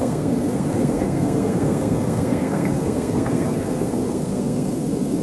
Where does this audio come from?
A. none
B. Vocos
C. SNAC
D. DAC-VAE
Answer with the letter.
C